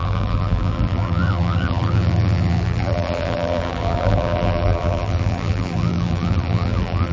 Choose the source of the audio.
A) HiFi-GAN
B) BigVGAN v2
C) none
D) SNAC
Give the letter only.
B